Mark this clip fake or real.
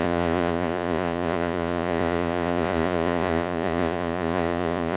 fake